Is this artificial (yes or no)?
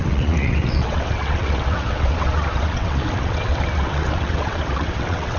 yes